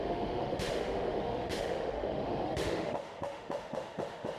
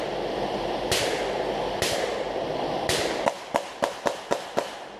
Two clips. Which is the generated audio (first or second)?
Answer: first